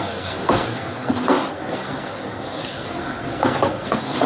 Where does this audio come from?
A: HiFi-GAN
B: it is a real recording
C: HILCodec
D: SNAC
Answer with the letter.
D